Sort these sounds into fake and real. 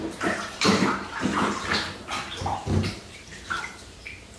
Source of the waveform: fake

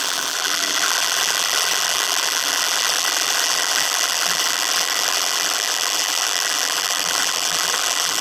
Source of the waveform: fake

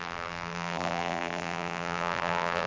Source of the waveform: fake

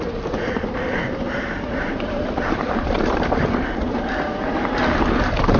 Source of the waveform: fake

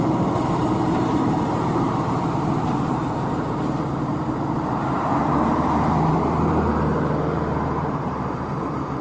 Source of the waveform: fake